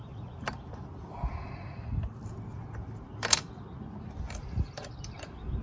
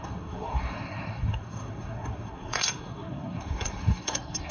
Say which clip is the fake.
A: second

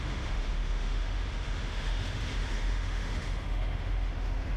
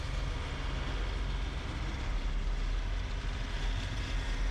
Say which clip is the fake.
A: first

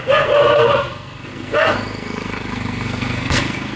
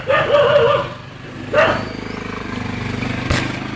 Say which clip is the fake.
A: first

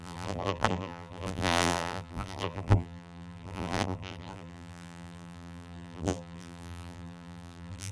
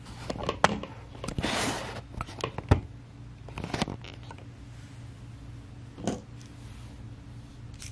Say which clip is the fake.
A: first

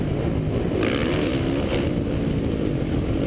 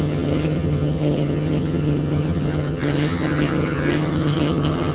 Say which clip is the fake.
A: second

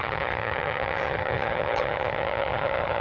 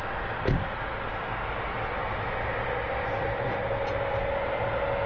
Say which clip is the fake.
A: first